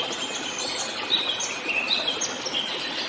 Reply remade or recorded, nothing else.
recorded